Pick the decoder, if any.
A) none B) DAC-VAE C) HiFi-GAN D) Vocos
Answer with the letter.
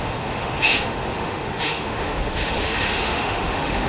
B